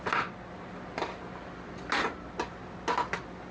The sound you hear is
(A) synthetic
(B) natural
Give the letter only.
B